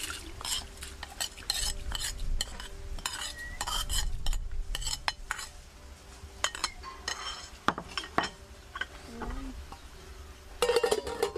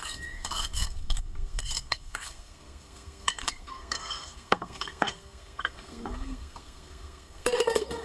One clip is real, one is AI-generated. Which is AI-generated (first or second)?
second